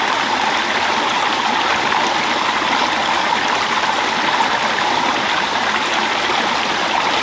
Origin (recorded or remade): recorded